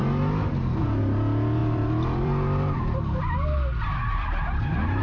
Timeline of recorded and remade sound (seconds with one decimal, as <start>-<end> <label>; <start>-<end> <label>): 0.0-1.6 recorded; 1.6-3.2 remade; 3.2-5.0 recorded